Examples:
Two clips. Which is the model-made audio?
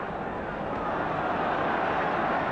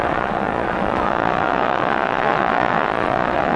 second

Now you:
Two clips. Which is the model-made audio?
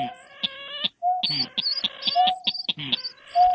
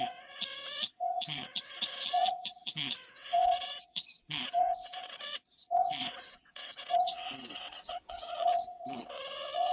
second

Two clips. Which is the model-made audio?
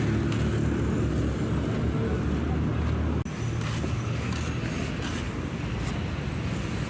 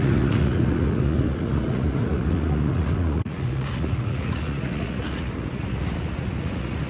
second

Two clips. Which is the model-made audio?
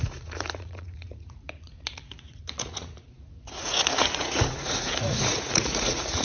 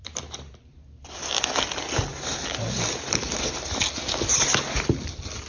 first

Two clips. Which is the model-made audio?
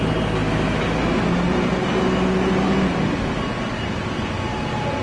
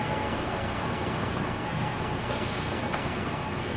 second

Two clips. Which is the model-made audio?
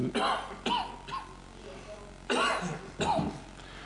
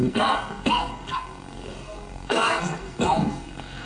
second